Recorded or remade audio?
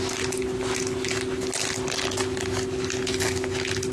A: recorded